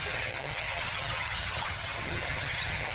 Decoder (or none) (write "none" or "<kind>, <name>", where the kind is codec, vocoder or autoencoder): vocoder, HiFi-GAN